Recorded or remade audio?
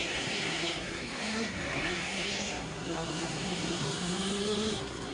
remade